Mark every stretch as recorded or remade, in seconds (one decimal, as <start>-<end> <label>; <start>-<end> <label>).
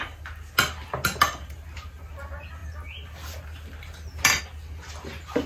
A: 0.0-5.5 recorded